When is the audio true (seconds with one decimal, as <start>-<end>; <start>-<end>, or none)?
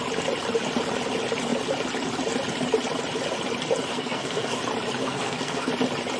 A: 0.0-3.9; 4.6-5.0; 5.7-6.2